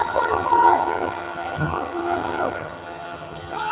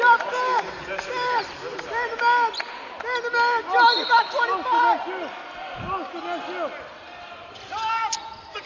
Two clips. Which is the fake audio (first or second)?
first